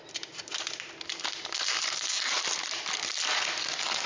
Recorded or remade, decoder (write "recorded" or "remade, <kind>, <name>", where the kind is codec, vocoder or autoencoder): recorded